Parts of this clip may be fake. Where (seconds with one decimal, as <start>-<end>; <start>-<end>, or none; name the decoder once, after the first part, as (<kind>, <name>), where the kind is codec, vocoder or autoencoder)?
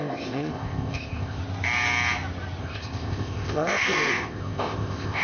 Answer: 0.0-1.4 (codec, ZipCodec); 2.6-5.2